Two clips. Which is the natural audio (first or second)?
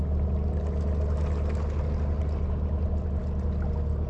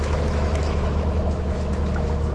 first